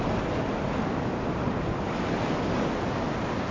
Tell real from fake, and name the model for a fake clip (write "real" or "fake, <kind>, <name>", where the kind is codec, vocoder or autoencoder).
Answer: real